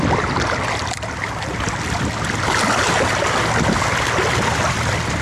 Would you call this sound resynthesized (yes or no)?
no